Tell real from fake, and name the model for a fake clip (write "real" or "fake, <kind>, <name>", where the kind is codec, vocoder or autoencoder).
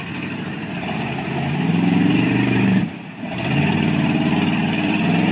fake, vocoder, BigVGAN v2